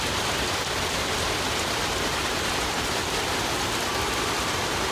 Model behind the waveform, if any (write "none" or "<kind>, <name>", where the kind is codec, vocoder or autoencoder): none